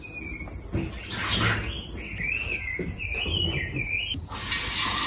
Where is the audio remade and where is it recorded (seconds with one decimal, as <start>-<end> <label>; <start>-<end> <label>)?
0.0-5.1 recorded